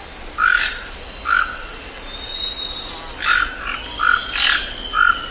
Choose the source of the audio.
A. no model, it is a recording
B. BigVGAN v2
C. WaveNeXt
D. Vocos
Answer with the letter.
A